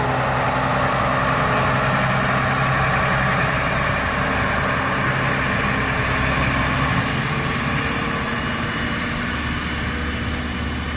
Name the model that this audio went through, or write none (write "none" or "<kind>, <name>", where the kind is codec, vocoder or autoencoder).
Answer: none